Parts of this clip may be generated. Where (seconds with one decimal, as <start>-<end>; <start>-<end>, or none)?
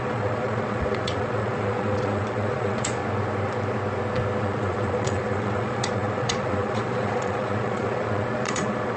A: 0.0-3.0; 4.4-9.0